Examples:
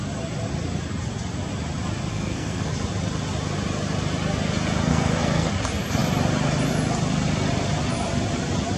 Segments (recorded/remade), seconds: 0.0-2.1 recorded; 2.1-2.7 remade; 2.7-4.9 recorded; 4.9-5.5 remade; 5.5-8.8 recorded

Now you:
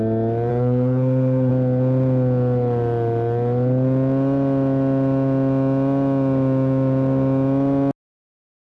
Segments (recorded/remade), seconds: 0.0-0.5 recorded; 0.5-1.5 remade; 1.5-8.8 recorded

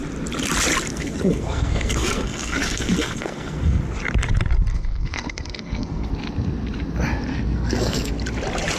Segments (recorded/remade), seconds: 0.0-0.9 recorded; 0.9-3.8 remade; 3.8-4.7 recorded; 4.7-6.1 remade; 6.1-7.3 recorded; 7.3-8.1 remade; 8.1-8.8 recorded

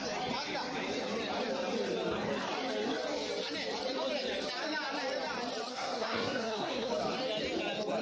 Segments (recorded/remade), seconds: 0.0-5.7 recorded; 5.7-6.9 remade; 6.9-8.0 recorded